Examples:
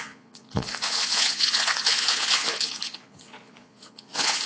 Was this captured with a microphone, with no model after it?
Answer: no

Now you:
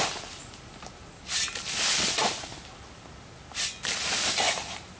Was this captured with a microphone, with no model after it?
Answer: yes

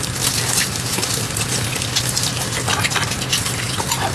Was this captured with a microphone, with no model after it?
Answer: yes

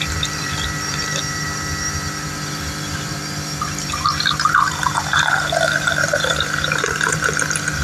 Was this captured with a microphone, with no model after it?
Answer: no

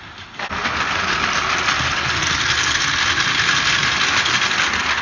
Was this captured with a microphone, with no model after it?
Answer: yes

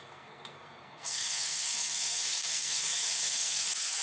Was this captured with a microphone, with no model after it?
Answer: no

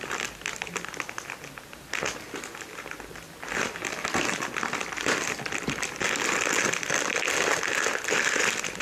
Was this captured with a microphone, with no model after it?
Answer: yes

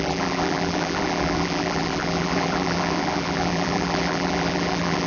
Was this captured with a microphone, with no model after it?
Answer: no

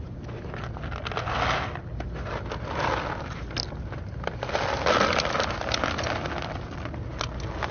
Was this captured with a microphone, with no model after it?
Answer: yes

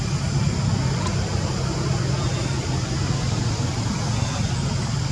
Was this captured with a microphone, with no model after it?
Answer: yes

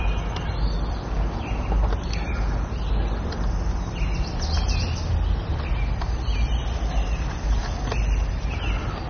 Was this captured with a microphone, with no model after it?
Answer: yes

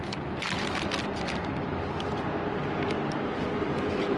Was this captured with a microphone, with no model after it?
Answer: yes